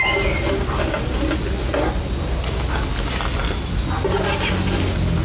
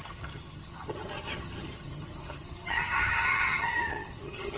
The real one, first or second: first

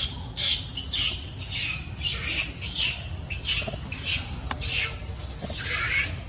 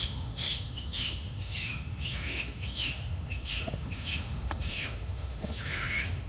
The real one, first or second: first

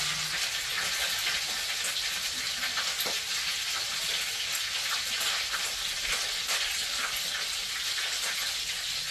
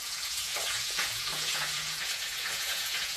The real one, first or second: first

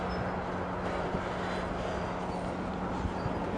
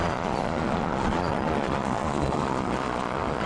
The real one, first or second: first